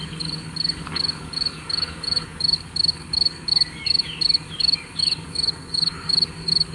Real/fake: fake